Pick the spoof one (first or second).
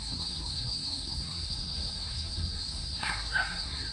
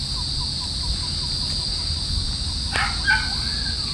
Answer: first